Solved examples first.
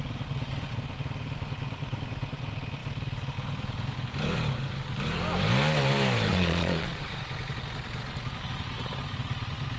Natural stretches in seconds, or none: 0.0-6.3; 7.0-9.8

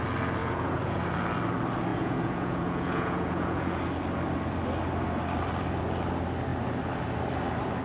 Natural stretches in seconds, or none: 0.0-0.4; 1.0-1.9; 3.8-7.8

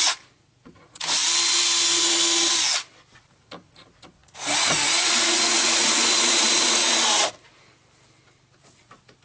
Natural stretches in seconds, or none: 1.2-3.3; 6.8-8.6

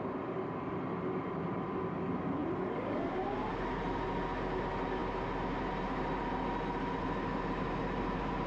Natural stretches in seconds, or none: 0.0-8.5